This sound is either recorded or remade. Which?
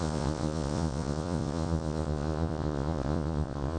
remade